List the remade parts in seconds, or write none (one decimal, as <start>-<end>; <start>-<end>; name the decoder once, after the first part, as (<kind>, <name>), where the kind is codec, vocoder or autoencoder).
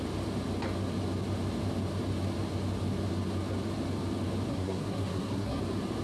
4.5-5.6 (codec, SNAC)